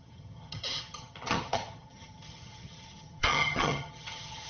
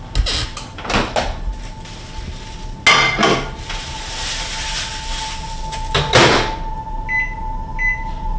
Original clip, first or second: second